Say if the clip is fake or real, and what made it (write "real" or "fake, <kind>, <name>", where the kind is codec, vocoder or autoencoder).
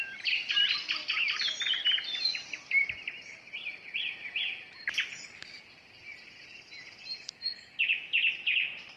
real